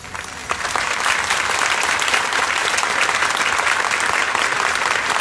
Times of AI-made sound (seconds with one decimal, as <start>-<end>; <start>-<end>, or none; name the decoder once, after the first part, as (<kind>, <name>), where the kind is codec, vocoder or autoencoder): none